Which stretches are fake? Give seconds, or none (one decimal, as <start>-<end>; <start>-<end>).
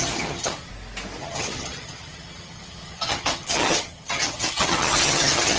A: 0.0-0.7; 1.2-5.6